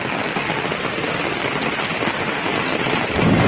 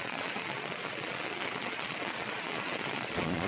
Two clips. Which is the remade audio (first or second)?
second